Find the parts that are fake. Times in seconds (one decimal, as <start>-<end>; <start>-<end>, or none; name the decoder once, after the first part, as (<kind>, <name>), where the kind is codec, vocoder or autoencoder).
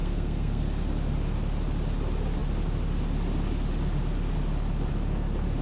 0.0-0.6 (codec, SNAC)